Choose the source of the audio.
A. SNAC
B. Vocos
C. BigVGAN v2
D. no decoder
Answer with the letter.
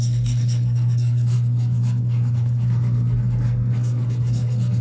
A